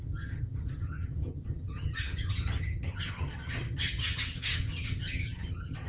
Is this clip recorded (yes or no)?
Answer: no